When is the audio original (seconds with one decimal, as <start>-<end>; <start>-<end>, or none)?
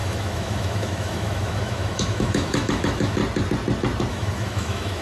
3.2-4.1